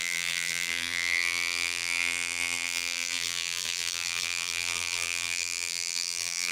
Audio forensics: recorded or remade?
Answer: remade